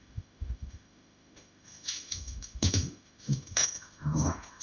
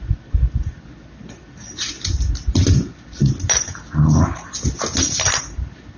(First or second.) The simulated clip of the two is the first